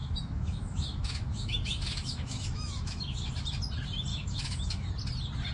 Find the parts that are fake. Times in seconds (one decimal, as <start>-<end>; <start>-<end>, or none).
0.0-3.3; 4.1-4.9